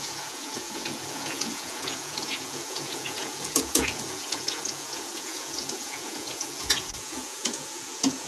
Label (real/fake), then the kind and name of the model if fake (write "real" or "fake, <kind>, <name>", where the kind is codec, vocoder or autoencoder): fake, vocoder, Vocos